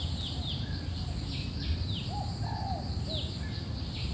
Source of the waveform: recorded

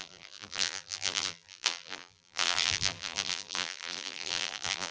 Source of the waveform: remade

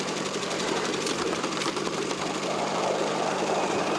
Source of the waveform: remade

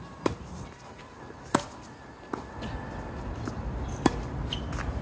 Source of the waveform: recorded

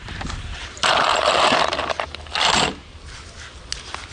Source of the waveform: recorded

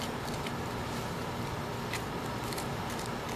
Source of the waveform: recorded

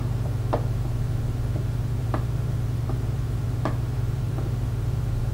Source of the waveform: remade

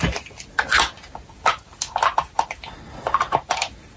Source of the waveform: recorded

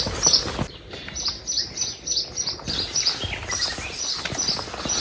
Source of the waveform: recorded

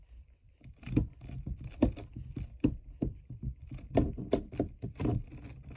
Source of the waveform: remade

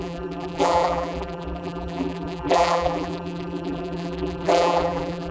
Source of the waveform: remade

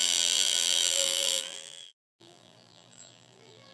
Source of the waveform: remade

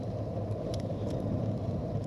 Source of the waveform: remade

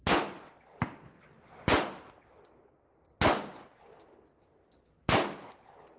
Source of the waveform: recorded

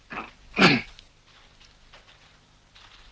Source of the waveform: recorded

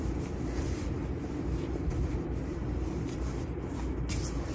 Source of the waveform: recorded